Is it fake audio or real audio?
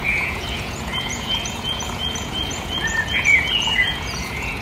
fake